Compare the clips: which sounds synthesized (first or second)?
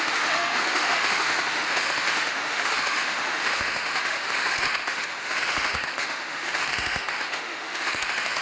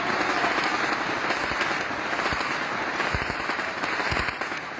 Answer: first